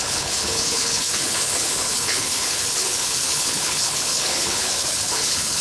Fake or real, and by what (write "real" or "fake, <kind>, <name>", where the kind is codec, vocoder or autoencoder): fake, codec, HILCodec